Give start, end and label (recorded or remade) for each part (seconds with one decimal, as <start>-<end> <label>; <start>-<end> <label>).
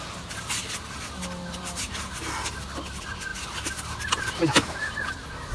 0.0-5.5 recorded